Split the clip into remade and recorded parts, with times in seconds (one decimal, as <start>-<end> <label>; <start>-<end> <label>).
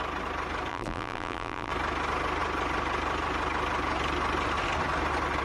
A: 0.0-0.7 recorded; 0.7-1.7 remade; 1.7-5.4 recorded